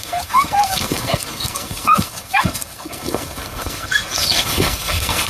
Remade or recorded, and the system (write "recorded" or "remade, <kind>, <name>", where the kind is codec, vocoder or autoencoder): remade, codec, SNAC